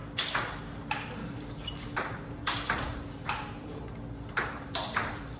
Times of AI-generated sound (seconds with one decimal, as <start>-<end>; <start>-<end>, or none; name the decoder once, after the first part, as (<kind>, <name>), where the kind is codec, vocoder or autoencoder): 0.8-5.4 (vocoder, BigVGAN v2)